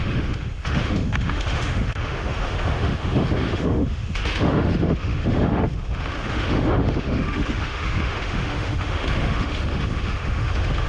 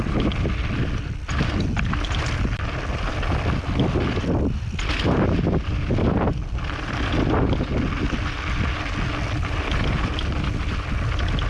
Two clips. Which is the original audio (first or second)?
second